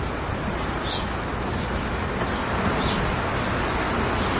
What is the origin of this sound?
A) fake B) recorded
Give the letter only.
B